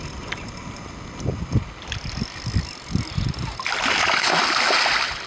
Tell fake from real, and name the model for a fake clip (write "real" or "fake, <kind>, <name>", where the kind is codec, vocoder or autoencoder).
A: real